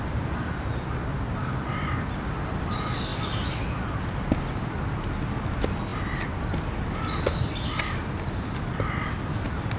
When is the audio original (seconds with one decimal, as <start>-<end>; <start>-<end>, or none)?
0.0-9.8